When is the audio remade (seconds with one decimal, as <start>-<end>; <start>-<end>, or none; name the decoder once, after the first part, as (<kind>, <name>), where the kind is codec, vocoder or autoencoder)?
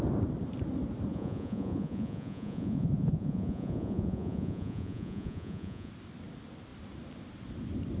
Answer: 1.1-5.9 (vocoder, Vocos)